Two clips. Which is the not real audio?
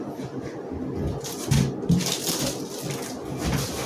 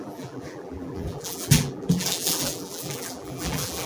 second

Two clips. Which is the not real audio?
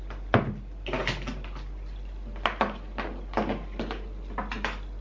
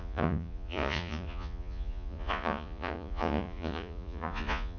second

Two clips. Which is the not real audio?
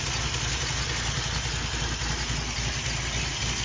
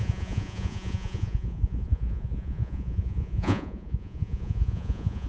second